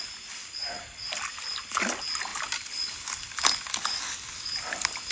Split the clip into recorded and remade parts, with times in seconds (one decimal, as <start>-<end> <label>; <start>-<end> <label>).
0.0-3.7 recorded; 3.7-4.5 remade; 4.5-5.1 recorded